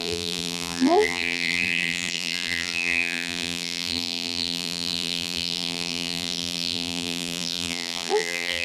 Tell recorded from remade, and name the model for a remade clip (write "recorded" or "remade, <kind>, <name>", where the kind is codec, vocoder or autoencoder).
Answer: remade, vocoder, BigVGAN v2